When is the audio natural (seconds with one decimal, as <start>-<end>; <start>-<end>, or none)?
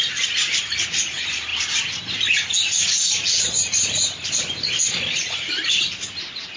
0.0-6.6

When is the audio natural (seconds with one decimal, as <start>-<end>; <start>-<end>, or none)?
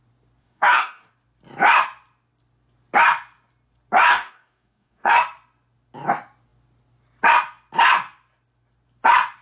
0.0-0.4; 1.1-4.1; 5.2-9.4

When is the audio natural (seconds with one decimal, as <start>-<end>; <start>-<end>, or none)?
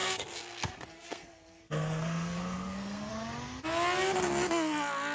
3.1-5.1